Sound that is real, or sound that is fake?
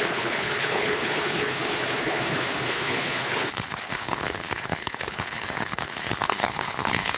fake